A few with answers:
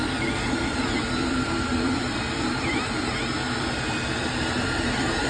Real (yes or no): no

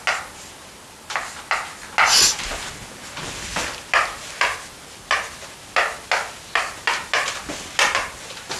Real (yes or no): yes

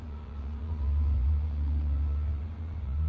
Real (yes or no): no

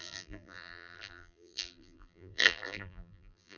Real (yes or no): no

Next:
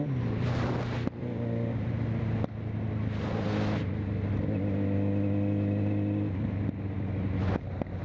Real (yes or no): yes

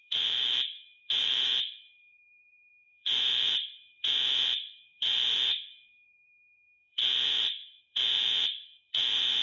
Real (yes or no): no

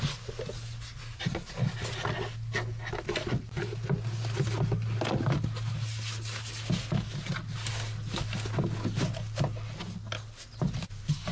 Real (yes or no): yes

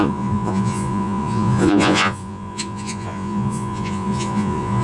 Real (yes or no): no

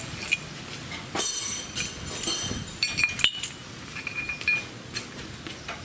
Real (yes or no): yes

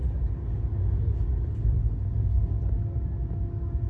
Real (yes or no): yes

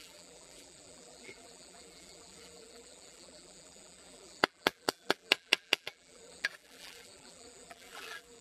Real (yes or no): no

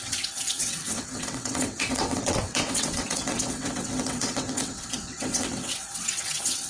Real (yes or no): no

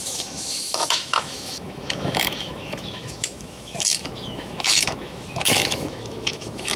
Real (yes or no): no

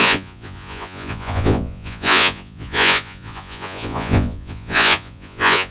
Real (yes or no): no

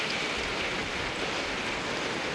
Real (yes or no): yes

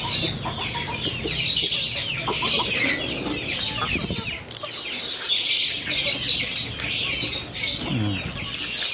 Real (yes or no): yes